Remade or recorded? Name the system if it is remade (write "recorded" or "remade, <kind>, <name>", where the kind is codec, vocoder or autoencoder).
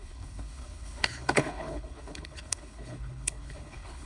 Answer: remade, codec, HILCodec